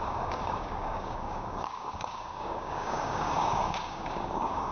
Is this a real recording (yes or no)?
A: no